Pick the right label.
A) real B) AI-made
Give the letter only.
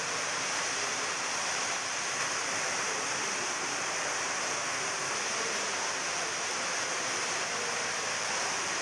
B